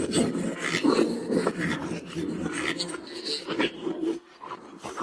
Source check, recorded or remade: recorded